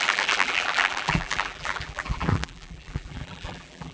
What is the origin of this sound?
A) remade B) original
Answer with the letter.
A